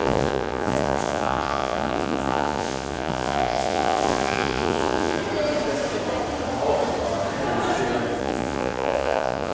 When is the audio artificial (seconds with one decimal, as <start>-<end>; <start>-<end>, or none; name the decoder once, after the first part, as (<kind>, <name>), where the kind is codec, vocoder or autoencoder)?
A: 0.0-5.2 (vocoder, Vocos); 8.2-9.5

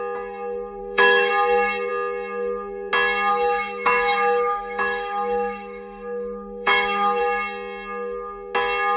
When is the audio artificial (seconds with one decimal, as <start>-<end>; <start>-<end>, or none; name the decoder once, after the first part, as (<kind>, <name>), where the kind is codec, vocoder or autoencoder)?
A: 0.8-1.3 (autoencoder, DAC-VAE); 3.3-7.2

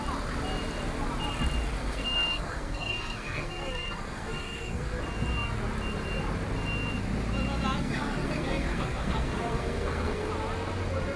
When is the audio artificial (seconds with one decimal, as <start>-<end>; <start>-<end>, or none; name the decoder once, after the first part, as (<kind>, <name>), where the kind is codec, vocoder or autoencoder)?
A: 1.8-5.0 (codec, SNAC); 7.8-10.3

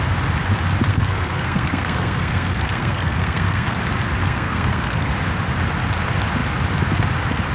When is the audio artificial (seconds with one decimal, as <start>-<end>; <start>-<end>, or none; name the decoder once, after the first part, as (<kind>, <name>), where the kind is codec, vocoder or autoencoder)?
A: 0.9-3.8 (codec, SNAC); 4.2-5.1

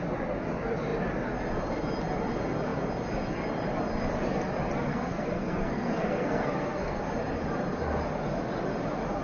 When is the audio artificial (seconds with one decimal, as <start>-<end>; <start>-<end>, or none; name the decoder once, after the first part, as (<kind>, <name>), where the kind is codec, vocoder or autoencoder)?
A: 4.9-7.0 (codec, SNAC)

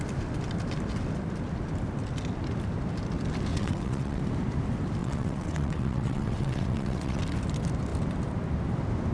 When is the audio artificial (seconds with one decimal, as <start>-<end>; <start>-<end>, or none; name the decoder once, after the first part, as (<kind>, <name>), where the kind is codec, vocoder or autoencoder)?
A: 3.5-4.2 (vocoder, WaveNeXt); 5.0-7.2

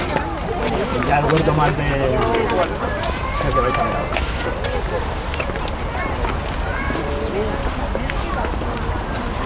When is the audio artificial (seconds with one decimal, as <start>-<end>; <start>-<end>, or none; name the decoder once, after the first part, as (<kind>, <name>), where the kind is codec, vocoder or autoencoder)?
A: none

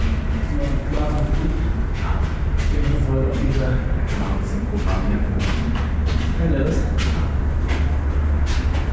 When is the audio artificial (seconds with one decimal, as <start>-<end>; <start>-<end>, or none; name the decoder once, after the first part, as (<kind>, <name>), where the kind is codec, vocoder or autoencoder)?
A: none